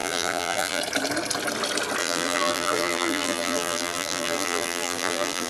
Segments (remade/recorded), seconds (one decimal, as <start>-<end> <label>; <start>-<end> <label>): 0.0-0.8 remade; 0.8-2.0 recorded; 2.0-5.5 remade